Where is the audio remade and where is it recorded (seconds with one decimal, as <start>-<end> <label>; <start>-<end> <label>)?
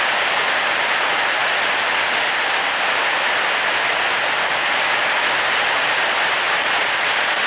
0.0-6.6 recorded; 6.6-7.5 remade